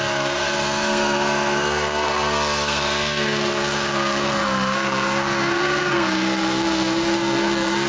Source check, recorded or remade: remade